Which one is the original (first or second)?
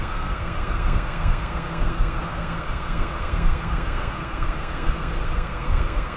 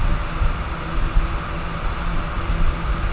second